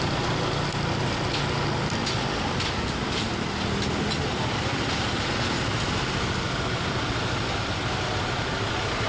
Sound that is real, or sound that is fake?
real